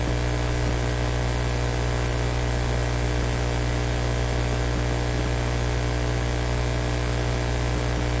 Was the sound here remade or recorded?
recorded